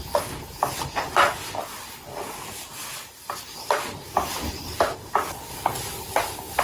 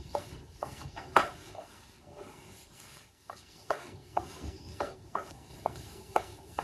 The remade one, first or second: second